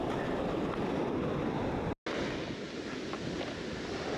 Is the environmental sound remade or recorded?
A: recorded